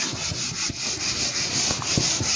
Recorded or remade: recorded